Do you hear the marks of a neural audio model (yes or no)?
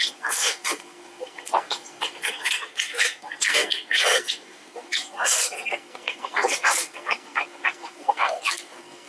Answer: yes